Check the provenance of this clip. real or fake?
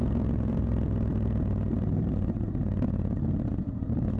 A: fake